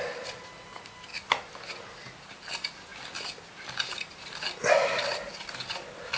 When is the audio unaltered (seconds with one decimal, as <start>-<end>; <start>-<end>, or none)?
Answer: 0.0-6.2